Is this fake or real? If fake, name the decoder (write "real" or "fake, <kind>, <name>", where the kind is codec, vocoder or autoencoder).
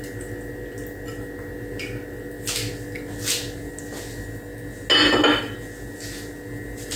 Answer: real